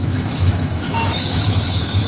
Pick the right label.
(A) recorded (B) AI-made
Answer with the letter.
B